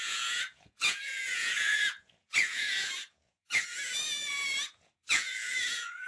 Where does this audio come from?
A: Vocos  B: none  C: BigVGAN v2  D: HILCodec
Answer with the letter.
A